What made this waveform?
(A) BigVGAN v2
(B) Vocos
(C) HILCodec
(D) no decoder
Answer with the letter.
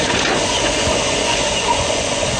B